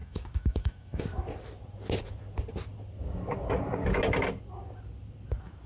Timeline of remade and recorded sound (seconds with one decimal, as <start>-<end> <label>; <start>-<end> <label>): 0.0-1.0 remade; 1.0-5.7 recorded